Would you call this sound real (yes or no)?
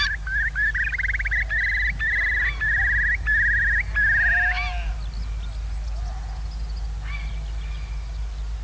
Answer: yes